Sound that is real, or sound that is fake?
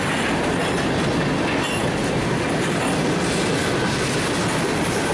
real